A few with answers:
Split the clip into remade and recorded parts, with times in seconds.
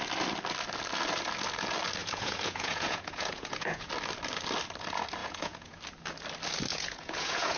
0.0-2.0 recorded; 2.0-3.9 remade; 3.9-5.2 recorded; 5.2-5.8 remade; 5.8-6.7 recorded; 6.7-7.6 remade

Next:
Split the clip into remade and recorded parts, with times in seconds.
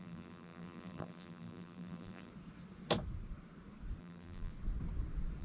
0.0-2.3 remade; 2.3-4.0 recorded; 4.0-4.5 remade; 4.5-5.4 recorded